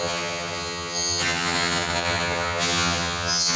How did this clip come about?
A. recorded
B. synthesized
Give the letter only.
B